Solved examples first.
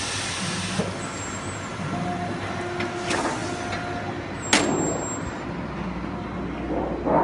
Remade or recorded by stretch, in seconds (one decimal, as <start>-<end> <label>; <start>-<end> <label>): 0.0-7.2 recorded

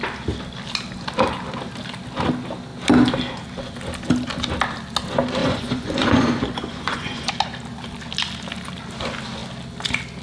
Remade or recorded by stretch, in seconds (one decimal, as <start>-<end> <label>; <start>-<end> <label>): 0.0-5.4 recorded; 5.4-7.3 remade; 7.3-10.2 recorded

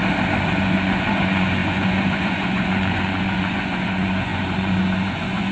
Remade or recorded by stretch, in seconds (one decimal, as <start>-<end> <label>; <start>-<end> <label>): 0.0-0.6 recorded; 0.6-5.5 remade